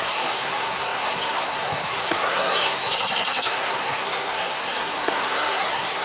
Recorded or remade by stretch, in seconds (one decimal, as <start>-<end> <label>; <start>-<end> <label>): 0.0-6.0 remade